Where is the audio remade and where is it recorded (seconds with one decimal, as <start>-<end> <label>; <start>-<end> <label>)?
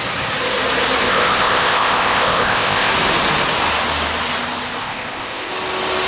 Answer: 0.0-1.0 recorded; 1.0-2.9 remade; 2.9-4.8 recorded; 4.8-5.5 remade; 5.5-6.1 recorded